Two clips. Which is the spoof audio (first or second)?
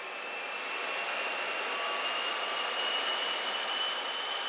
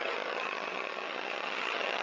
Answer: second